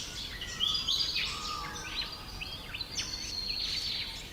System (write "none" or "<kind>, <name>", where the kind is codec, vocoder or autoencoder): none